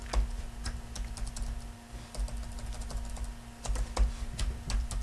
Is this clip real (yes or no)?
yes